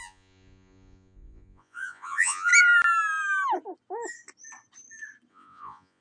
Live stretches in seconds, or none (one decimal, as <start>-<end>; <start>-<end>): 2.5-5.3